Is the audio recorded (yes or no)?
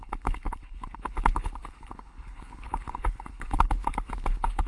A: no